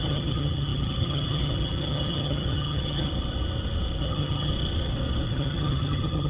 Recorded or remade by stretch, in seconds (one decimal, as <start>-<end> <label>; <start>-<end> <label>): 0.0-3.1 remade; 3.1-4.0 recorded; 4.0-4.5 remade; 4.5-5.3 recorded; 5.3-6.3 remade